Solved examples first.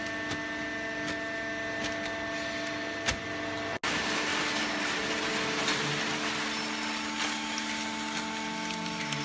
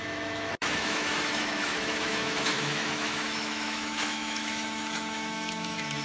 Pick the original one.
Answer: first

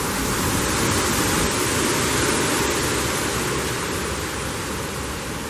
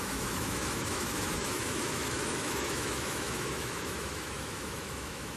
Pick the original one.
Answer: first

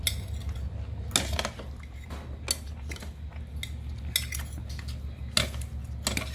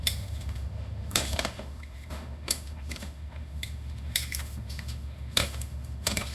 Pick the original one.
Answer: first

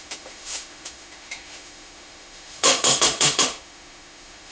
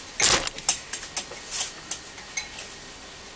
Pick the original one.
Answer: second